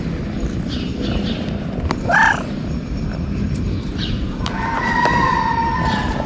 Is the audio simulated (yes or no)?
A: no